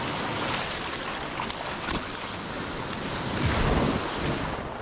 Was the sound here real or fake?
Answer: real